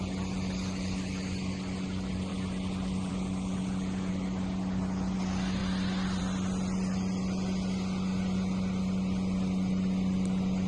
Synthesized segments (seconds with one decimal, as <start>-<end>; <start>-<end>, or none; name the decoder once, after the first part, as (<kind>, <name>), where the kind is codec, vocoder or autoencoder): 3.6-4.1 (vocoder, Vocos)